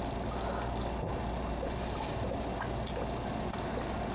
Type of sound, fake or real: real